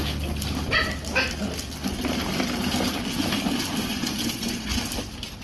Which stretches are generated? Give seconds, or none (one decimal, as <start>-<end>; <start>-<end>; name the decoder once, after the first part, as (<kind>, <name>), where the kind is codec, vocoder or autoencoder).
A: 3.9-4.8 (vocoder, Vocos)